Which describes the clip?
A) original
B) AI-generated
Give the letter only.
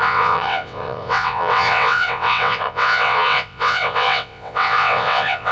B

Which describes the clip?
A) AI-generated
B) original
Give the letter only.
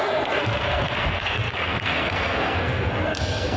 A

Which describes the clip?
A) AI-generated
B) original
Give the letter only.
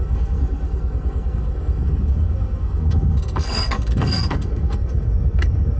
A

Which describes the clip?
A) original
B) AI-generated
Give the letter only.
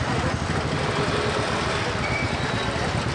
A